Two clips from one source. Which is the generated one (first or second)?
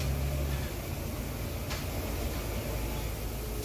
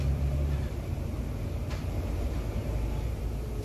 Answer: second